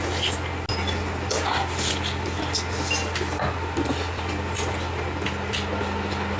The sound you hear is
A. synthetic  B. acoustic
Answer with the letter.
B